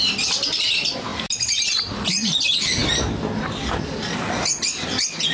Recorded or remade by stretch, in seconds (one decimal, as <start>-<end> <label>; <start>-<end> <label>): 0.0-5.3 recorded